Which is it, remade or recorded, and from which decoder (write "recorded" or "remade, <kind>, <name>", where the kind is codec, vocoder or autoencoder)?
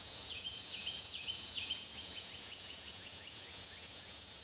remade, vocoder, Vocos